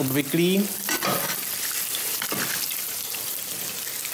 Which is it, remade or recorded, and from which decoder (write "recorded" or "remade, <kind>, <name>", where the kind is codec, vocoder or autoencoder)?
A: recorded